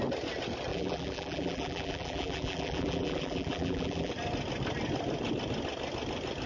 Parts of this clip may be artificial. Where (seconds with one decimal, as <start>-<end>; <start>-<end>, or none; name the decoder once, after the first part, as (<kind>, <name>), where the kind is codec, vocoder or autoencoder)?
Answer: 0.7-4.1 (vocoder, BigVGAN v2)